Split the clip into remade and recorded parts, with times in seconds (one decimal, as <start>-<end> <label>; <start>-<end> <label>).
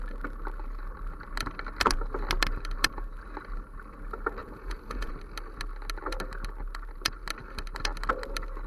0.0-4.4 recorded; 4.4-5.1 remade; 5.1-8.7 recorded